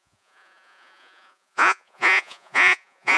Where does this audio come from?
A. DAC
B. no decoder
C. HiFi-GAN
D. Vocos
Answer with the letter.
D